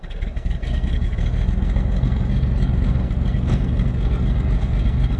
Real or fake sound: fake